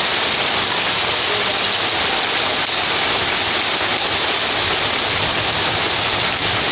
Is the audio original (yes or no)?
yes